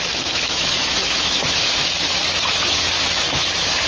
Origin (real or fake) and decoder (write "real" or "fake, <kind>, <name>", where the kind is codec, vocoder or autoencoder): fake, autoencoder, DAC-VAE